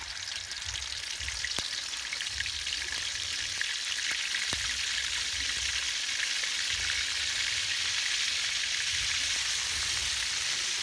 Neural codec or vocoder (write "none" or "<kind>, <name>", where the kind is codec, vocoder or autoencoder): none